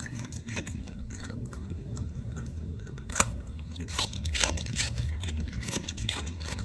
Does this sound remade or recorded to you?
remade